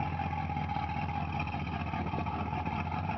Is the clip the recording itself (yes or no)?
no